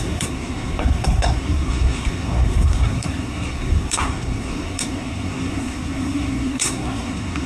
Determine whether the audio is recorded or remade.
remade